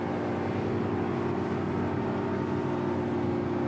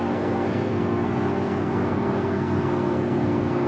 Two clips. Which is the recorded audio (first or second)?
first